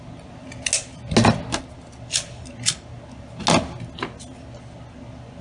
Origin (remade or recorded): recorded